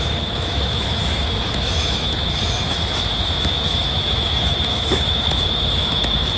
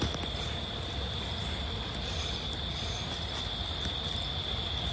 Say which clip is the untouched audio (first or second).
second